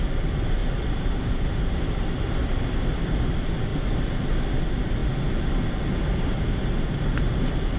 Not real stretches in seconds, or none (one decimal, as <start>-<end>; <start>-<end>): 0.0-5.0; 6.3-7.8